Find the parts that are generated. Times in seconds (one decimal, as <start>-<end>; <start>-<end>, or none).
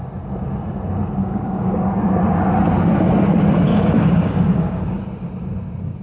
1.2-2.1; 3.7-5.0